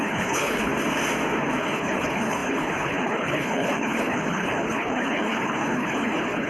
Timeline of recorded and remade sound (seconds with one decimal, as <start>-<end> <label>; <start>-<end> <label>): 0.0-0.7 remade; 0.7-1.6 recorded; 1.6-6.5 remade